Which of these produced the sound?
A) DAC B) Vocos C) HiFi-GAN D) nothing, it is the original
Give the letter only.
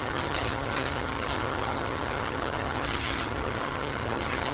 C